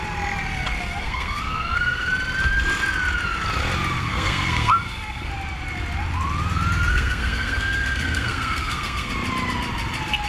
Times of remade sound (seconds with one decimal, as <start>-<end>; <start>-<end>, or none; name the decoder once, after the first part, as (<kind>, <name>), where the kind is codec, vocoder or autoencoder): 1.0-2.1 (codec, SNAC); 4.0-5.3; 6.9-9.1